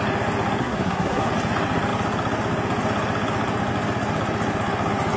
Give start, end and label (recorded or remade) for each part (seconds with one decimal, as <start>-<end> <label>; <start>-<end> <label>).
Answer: 0.0-0.6 recorded; 0.6-1.3 remade; 1.3-5.2 recorded